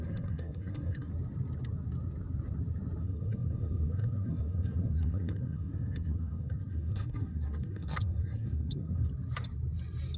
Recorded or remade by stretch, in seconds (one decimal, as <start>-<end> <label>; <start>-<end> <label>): 0.0-1.1 remade; 1.1-3.0 recorded; 3.0-9.1 remade; 9.1-10.2 recorded